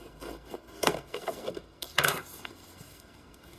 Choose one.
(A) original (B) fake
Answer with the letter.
B